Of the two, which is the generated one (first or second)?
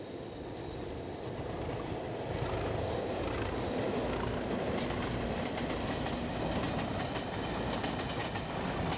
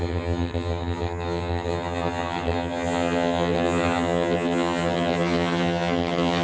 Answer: second